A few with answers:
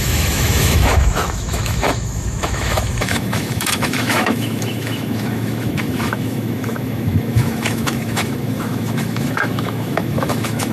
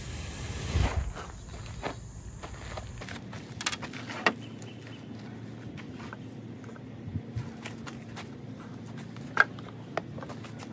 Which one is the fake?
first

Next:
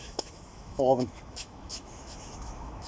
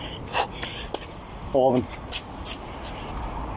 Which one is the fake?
first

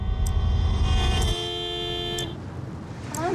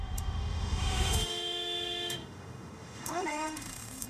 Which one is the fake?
second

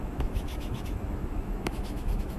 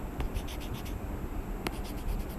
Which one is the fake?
first